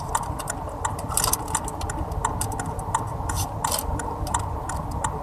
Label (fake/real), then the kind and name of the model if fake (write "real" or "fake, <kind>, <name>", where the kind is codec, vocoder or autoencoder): real